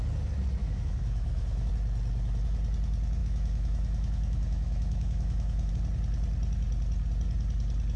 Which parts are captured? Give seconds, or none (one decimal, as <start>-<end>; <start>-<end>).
0.0-0.6; 1.7-3.2; 5.7-8.0